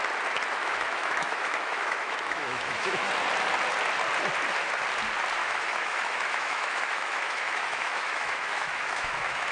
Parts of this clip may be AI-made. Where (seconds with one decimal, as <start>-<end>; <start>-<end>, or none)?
0.6-3.1; 5.4-9.5